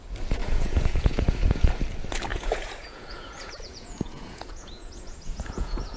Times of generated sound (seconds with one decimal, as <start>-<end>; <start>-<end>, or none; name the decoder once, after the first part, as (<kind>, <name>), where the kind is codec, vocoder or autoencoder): 0.4-1.7 (vocoder, Vocos); 2.3-6.0